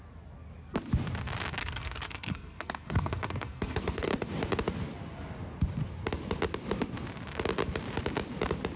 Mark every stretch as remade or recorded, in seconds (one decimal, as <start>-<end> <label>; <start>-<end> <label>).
0.0-1.6 recorded; 1.6-4.1 remade; 4.1-8.8 recorded